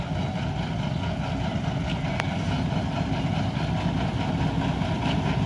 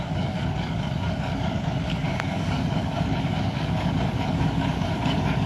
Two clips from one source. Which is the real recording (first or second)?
first